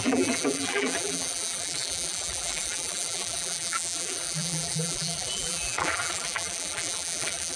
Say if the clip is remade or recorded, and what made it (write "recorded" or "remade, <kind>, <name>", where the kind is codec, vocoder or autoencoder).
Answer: remade, vocoder, BigVGAN v2